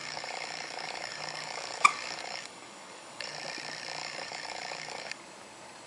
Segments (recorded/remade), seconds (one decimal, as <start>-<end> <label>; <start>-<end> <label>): 0.0-3.3 remade; 3.3-4.0 recorded; 4.0-5.2 remade; 5.2-5.9 recorded